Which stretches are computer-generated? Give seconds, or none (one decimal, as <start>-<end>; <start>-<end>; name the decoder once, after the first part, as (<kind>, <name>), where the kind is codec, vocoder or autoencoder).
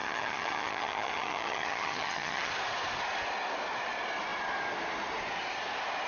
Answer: 0.0-2.5 (vocoder, HiFi-GAN)